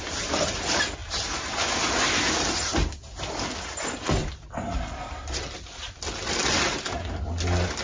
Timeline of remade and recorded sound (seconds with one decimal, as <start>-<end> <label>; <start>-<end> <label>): 0.0-1.0 recorded; 1.0-1.5 remade; 1.5-4.2 recorded; 4.2-5.4 remade; 5.4-7.8 recorded